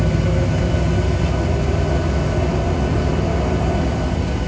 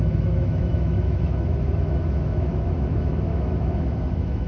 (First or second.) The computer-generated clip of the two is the second